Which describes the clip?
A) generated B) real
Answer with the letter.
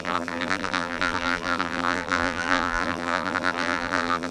A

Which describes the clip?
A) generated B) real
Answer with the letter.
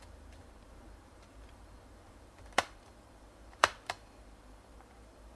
A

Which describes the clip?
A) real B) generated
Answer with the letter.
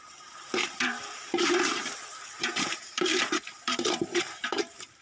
B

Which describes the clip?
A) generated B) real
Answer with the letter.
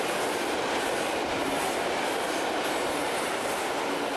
B